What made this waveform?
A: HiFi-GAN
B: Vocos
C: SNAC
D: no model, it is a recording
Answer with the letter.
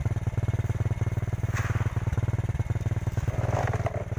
D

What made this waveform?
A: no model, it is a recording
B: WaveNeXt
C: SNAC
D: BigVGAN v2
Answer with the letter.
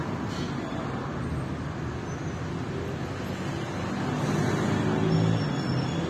A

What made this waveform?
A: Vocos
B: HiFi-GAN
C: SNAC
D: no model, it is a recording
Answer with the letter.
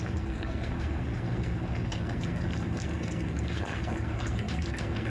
C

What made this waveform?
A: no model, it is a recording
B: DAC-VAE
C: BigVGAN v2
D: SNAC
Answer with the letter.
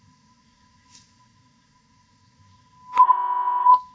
D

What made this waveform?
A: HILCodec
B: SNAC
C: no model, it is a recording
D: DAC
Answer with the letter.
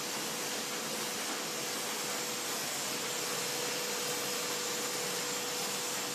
C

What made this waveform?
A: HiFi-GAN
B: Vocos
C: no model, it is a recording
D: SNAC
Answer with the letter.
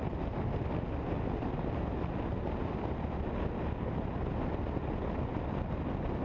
C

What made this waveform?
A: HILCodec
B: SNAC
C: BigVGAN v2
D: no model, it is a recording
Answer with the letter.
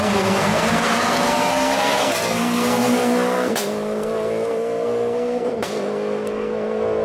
B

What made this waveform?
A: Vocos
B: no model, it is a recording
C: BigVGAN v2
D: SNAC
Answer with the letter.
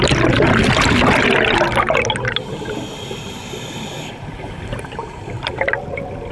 B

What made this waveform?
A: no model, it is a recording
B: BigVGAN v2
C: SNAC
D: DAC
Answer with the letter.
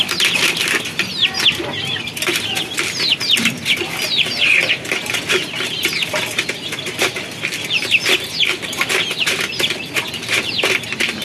A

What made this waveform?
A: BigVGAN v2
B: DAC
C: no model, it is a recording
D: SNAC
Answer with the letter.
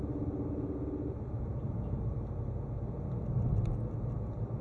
C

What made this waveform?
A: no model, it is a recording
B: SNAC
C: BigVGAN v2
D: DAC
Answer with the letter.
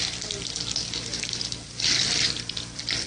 A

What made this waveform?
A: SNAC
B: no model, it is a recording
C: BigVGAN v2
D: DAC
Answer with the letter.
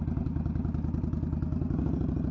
B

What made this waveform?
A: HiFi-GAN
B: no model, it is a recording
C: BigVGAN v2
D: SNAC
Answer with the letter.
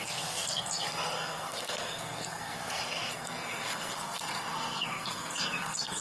D